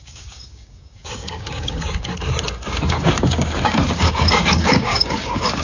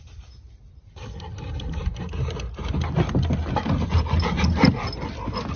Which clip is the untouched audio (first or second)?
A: second